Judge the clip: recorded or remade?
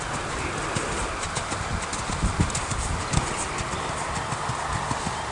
recorded